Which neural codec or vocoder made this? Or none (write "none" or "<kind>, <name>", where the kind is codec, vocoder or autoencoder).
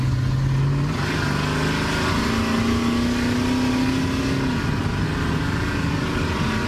none